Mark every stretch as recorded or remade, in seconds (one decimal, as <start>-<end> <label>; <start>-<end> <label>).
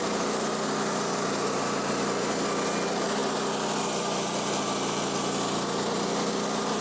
0.0-6.8 recorded